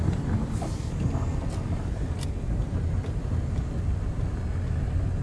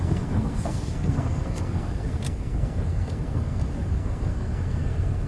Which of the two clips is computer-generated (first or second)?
second